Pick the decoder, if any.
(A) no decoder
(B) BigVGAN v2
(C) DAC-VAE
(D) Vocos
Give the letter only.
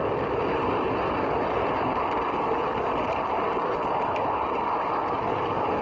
A